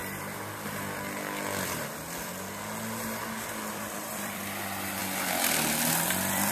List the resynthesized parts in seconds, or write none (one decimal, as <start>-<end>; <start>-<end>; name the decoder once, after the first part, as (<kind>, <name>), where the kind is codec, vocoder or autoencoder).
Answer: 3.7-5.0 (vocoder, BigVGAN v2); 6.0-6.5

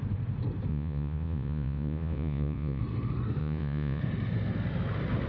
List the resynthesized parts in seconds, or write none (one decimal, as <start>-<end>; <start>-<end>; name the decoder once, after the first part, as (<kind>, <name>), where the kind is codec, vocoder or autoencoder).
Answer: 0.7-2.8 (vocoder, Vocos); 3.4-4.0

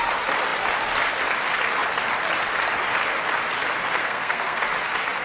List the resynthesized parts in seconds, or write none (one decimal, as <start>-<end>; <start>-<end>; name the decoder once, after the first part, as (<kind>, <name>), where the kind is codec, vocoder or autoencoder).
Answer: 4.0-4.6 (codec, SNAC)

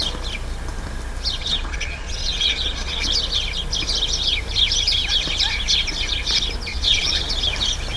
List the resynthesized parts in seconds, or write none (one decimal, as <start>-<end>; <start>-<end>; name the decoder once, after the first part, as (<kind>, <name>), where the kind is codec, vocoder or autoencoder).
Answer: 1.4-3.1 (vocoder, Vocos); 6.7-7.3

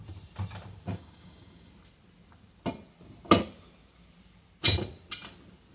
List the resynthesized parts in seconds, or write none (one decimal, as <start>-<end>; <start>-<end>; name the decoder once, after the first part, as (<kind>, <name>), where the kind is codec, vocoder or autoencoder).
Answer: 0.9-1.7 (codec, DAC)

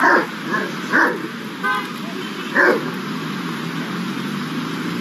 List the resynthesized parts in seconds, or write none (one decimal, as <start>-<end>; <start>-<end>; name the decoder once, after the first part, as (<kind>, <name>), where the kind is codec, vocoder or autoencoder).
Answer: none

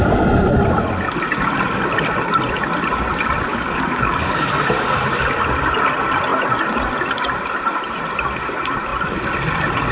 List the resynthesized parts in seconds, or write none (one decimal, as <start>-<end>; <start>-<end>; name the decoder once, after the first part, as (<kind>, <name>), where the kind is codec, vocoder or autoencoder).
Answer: 3.5-4.5 (codec, DAC)

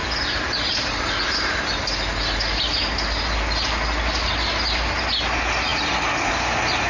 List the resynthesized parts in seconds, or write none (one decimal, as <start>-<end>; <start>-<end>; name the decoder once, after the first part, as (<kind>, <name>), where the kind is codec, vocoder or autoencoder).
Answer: none